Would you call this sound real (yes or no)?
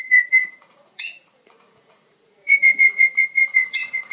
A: no